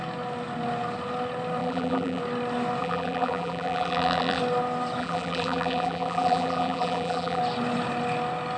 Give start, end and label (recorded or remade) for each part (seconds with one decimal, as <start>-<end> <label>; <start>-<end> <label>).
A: 0.0-1.6 recorded; 1.6-2.2 remade; 2.2-2.8 recorded; 2.8-4.4 remade; 4.4-5.0 recorded; 5.0-7.4 remade; 7.4-8.6 recorded